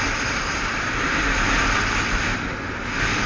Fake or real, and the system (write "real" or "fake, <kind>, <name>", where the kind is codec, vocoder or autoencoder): real